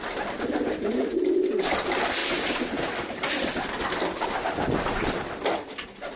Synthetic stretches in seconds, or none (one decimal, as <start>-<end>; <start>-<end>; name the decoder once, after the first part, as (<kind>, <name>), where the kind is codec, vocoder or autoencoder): 0.9-1.5 (vocoder, BigVGAN v2); 2.2-3.2